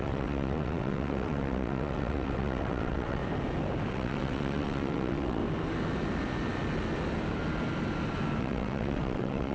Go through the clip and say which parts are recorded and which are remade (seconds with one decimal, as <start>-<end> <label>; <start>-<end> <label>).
0.0-3.2 remade; 3.2-3.9 recorded; 3.9-5.4 remade; 5.4-8.4 recorded; 8.4-9.5 remade